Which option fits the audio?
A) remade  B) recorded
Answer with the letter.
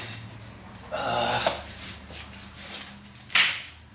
B